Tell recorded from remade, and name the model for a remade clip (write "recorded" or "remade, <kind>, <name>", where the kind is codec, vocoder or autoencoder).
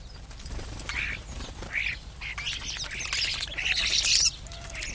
recorded